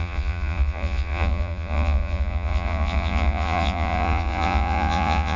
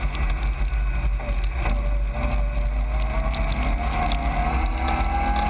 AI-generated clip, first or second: first